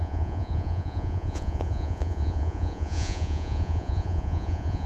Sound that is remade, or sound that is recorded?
remade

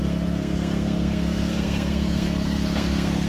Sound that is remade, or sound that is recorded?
remade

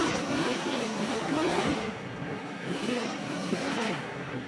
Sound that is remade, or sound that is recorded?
remade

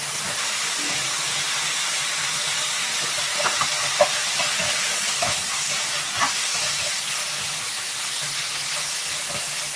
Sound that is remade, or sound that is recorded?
recorded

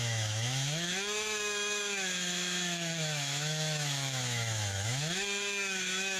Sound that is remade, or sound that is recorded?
remade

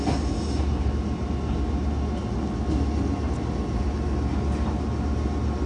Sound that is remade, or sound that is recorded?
recorded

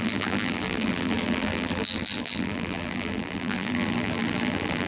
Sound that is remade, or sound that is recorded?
remade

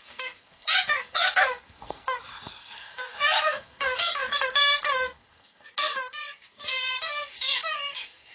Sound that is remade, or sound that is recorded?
remade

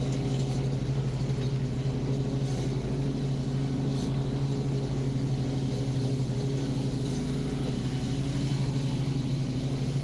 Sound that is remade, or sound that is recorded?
recorded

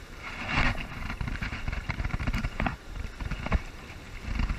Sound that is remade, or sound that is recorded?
remade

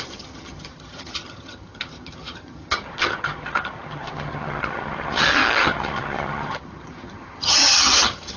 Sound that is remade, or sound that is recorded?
remade